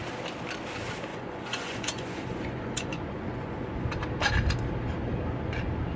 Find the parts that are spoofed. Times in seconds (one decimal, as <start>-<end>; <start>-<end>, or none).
1.1-3.9